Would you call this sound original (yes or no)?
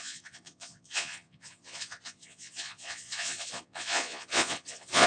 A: no